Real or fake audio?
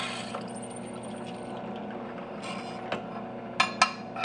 real